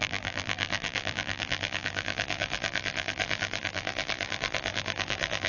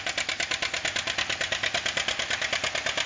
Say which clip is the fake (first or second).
first